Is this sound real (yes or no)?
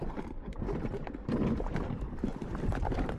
no